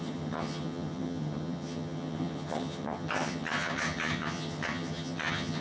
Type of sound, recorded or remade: remade